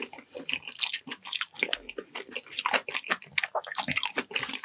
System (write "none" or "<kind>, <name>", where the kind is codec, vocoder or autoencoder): none